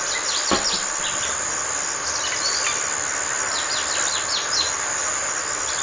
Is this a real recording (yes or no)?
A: yes